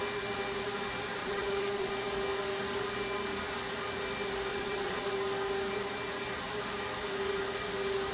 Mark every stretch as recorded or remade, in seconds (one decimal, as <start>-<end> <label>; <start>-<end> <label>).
0.0-1.2 recorded; 1.2-1.9 remade; 1.9-4.5 recorded; 4.5-5.1 remade; 5.1-8.1 recorded